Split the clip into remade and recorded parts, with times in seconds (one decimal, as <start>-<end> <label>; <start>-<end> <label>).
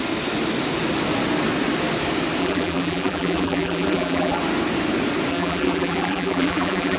0.0-2.4 recorded; 2.4-4.4 remade; 4.4-5.3 recorded; 5.3-7.0 remade